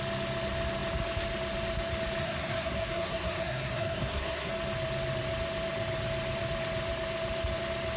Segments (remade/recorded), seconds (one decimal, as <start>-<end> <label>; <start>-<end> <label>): 0.0-2.2 recorded; 2.2-4.5 remade; 4.5-8.0 recorded